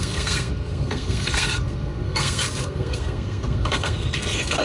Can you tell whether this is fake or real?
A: fake